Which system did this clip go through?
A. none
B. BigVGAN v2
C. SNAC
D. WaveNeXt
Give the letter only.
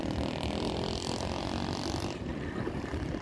B